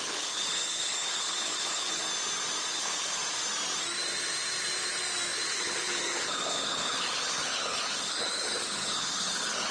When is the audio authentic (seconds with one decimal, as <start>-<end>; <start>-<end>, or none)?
2.0-2.7; 3.2-5.5